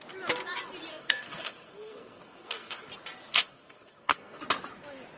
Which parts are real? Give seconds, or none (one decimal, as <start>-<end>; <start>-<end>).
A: 0.0-0.9; 2.8-3.3; 4.4-5.2